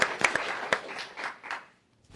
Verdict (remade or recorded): remade